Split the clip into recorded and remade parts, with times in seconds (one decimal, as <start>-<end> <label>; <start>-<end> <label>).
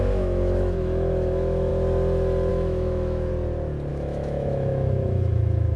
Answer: 0.0-1.7 remade; 1.7-2.5 recorded; 2.5-3.3 remade; 3.3-3.9 recorded; 3.9-5.8 remade